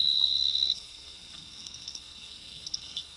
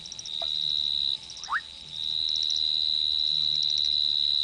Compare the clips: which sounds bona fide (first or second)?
second